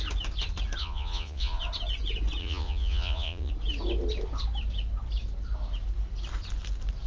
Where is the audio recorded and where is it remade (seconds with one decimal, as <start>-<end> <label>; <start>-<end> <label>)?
0.0-0.8 recorded; 0.8-1.6 remade; 1.6-2.4 recorded; 2.4-3.5 remade; 3.5-7.1 recorded